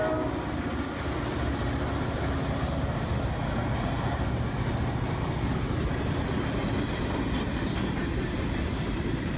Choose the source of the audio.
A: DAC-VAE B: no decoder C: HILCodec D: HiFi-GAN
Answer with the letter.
B